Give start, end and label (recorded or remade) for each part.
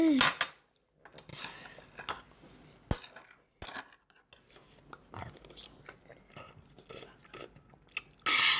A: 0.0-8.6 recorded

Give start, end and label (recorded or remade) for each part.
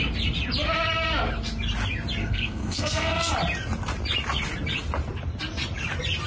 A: 0.0-2.2 recorded; 2.2-3.3 remade; 3.3-6.3 recorded